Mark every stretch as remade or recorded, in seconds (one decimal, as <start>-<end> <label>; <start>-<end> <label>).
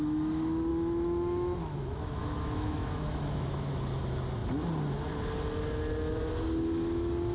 0.0-0.7 recorded; 0.7-3.7 remade; 3.7-7.3 recorded